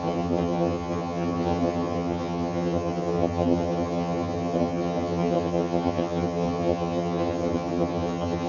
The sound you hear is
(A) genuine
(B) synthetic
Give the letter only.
B